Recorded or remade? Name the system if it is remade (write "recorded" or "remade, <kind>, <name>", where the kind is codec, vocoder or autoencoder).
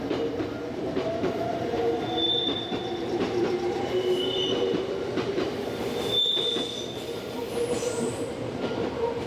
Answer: remade, vocoder, BigVGAN v2